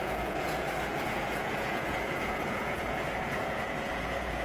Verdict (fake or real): fake